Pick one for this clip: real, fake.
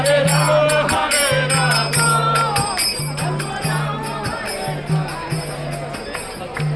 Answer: real